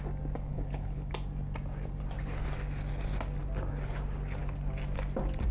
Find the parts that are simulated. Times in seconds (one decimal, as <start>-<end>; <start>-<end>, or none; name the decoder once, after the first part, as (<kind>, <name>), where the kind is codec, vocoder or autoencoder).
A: 0.5-1.1 (codec, HILCodec)